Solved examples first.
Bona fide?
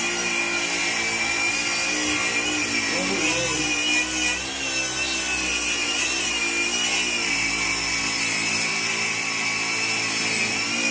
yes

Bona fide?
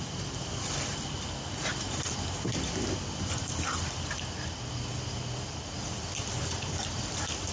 yes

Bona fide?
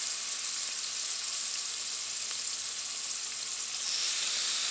yes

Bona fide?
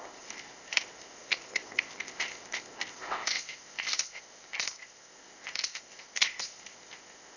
no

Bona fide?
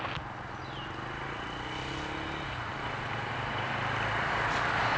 yes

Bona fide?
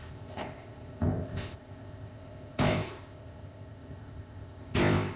no